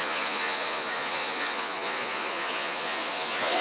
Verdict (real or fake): fake